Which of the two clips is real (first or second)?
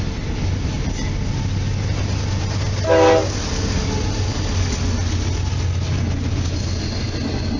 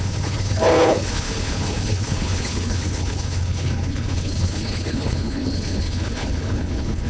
first